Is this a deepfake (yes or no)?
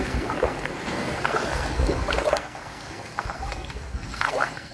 yes